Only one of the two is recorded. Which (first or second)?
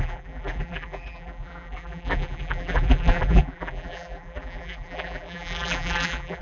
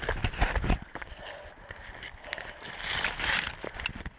second